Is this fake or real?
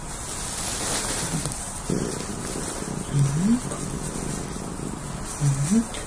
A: real